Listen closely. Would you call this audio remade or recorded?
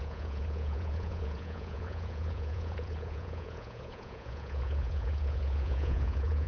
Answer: remade